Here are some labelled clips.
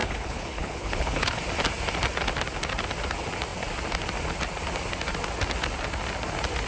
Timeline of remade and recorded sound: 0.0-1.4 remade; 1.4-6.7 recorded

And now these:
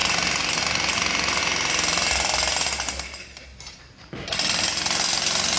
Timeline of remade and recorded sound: 0.0-5.6 recorded

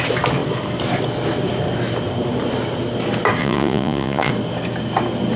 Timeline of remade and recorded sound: 0.0-3.4 recorded; 3.4-4.3 remade; 4.3-5.4 recorded

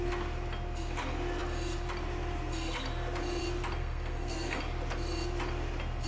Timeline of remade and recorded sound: 0.0-3.8 recorded; 3.8-4.6 remade; 4.6-6.1 recorded

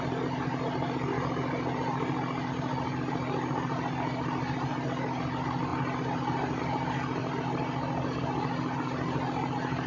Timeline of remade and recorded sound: 0.0-9.9 recorded

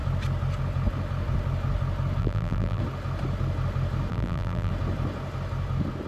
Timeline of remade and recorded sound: 0.0-2.2 recorded; 2.2-2.8 remade; 2.8-4.1 recorded; 4.1-4.7 remade; 4.7-6.1 recorded

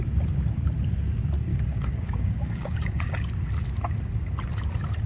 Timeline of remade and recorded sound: 0.0-1.5 recorded; 1.5-3.0 remade; 3.0-5.1 recorded

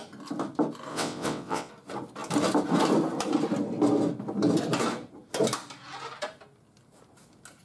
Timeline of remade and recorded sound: 0.0-0.9 recorded; 0.9-1.7 remade; 1.7-7.6 recorded